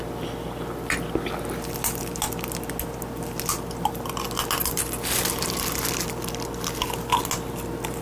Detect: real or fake real